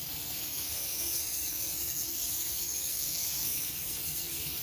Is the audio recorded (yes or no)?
no